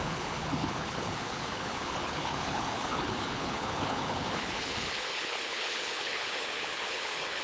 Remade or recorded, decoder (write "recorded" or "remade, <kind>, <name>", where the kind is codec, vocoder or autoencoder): remade, codec, HILCodec